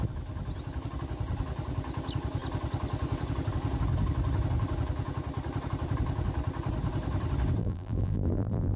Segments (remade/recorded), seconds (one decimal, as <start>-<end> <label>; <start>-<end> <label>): 0.0-7.6 recorded; 7.6-8.8 remade